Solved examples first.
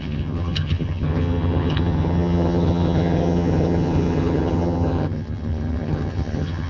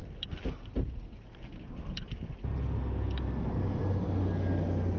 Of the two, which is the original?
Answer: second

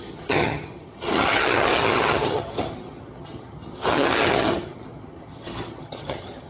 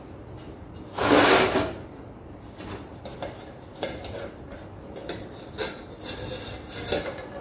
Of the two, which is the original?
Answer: second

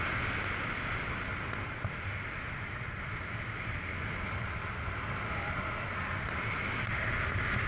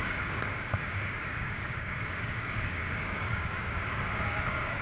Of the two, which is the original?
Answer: first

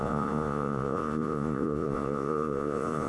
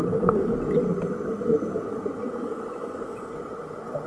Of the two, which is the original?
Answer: second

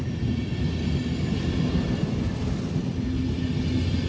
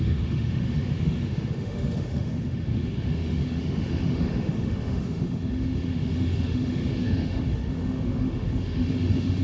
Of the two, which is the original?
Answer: first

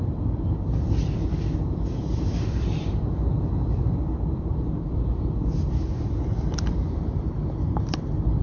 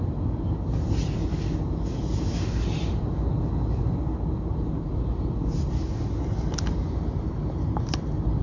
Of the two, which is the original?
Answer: second